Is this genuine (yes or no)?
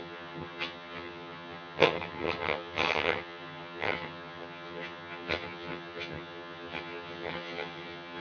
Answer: no